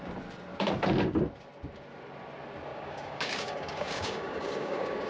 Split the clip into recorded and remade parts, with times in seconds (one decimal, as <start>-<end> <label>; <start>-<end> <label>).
0.0-2.7 recorded; 2.7-5.1 remade